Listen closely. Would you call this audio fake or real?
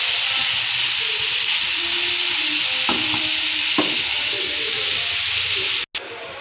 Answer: real